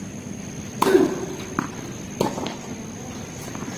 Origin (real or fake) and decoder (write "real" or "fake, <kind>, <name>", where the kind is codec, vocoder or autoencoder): real